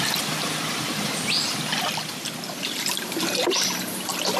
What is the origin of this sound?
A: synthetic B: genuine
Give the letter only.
B